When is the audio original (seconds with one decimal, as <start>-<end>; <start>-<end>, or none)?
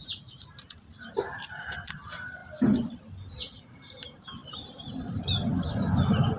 2.4-3.3